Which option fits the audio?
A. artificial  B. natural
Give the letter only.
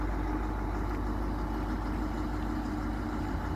B